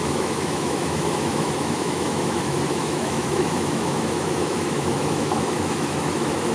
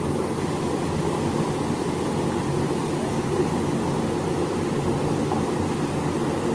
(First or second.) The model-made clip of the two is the first